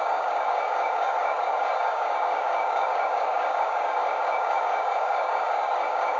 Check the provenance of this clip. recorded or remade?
remade